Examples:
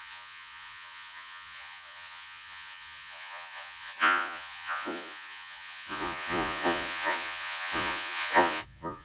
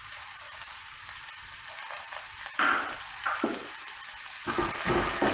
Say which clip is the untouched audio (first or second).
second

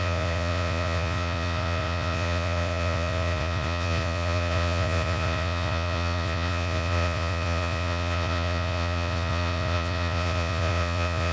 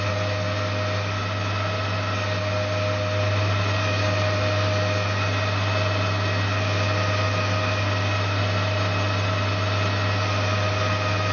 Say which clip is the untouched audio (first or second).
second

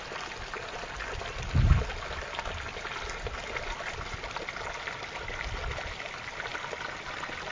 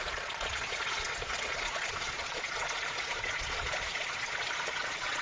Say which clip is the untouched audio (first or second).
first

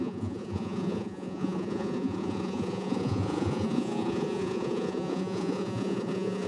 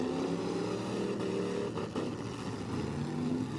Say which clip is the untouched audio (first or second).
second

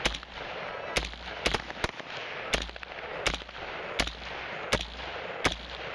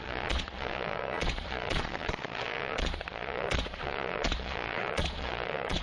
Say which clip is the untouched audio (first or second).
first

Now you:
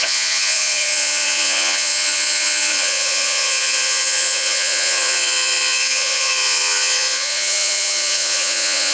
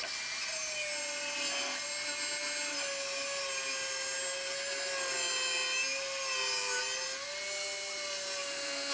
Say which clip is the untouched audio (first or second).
second